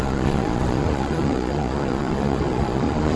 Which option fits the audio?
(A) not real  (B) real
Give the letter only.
A